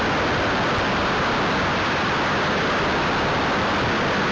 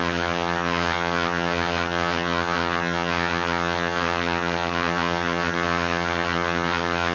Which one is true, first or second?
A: first